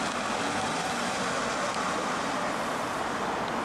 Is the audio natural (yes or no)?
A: yes